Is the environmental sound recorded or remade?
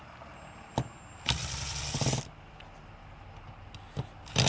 recorded